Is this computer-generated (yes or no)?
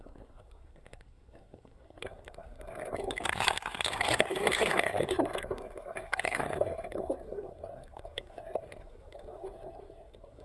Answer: yes